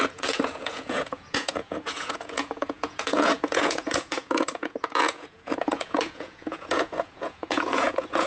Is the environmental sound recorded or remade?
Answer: remade